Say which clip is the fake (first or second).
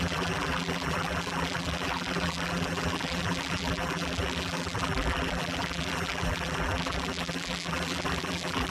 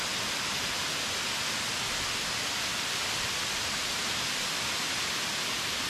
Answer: first